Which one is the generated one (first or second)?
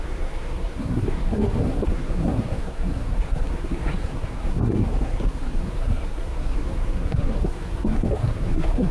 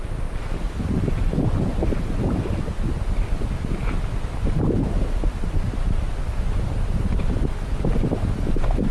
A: first